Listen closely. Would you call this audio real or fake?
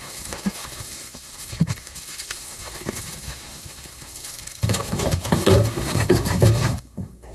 fake